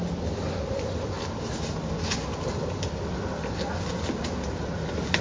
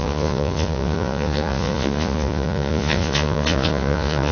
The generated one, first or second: second